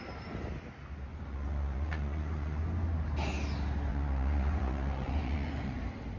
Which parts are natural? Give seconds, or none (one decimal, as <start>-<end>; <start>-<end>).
0.0-1.1; 2.6-3.9; 5.8-6.2